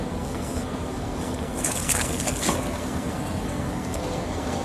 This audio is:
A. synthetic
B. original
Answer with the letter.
A